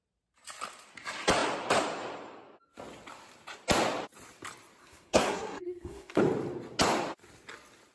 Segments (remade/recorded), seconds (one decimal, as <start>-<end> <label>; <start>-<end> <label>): 0.0-4.8 recorded; 4.8-6.2 remade; 6.2-7.9 recorded